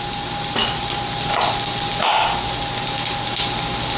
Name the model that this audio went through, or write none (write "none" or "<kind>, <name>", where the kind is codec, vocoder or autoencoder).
none